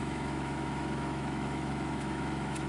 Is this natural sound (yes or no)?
no